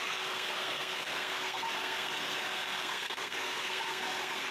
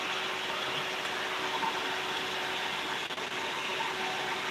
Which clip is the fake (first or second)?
first